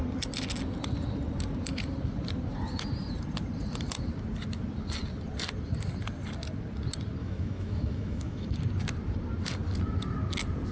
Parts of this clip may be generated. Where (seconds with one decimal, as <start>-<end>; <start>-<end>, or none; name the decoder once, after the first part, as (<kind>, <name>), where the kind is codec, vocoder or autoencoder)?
7.2-8.5 (autoencoder, DAC-VAE)